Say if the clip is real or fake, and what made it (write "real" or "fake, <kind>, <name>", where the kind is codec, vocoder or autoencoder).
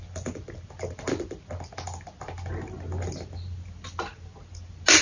real